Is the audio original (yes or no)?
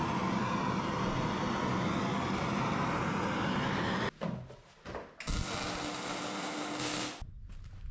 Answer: yes